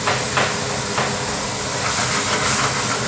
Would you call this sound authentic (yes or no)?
yes